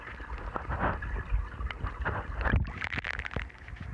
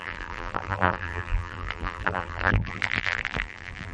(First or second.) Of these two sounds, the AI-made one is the second